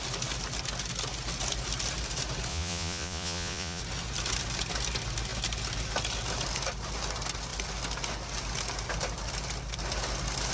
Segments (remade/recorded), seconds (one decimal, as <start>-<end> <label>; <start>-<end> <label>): 0.0-2.5 recorded; 2.5-3.8 remade; 3.8-10.5 recorded